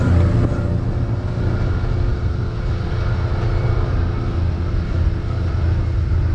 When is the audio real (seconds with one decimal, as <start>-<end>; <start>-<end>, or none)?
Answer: 0.0-6.3